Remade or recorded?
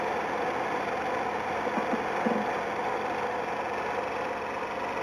recorded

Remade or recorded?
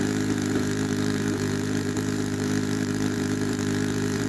remade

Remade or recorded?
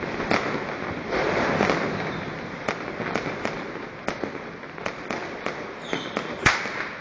recorded